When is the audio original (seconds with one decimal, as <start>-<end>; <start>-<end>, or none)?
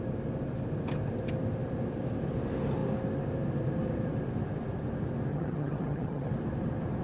0.0-5.3; 6.3-7.0